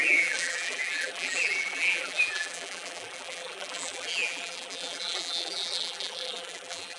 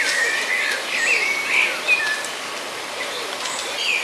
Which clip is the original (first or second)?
second